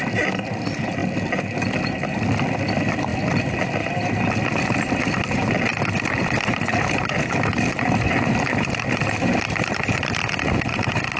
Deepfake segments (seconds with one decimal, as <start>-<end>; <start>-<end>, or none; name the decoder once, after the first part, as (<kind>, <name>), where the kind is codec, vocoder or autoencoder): none